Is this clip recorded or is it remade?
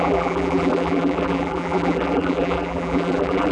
remade